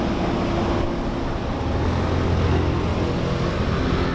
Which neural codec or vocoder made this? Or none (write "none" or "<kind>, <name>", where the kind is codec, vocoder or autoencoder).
none